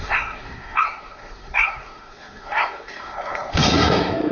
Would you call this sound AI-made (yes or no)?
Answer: yes